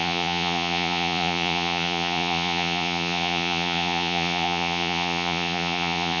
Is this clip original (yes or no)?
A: no